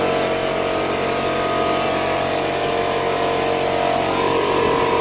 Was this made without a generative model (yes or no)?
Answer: yes